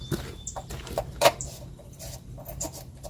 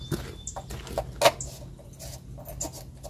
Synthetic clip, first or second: first